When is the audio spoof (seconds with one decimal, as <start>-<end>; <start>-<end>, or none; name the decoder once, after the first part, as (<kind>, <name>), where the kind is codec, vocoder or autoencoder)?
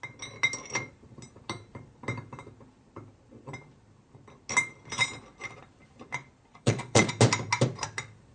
6.5-7.1 (vocoder, Vocos)